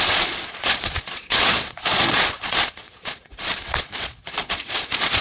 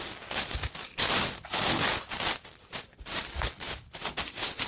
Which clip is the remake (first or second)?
first